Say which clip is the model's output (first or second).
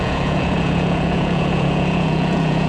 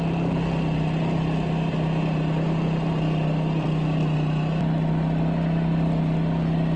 first